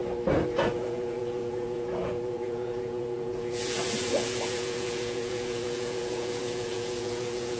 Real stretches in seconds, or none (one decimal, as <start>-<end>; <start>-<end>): 0.0-0.6